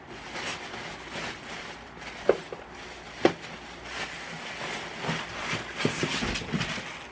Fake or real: real